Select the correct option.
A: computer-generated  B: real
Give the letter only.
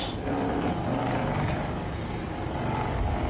B